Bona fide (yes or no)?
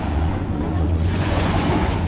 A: no